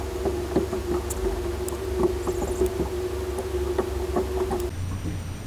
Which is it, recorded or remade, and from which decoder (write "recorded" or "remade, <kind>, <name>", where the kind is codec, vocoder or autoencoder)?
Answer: recorded